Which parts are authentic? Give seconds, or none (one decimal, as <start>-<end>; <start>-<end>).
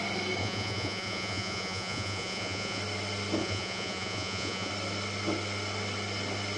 0.0-0.4; 2.8-3.4; 4.7-6.6